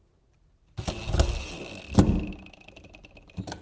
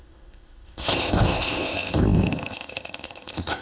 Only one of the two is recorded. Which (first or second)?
first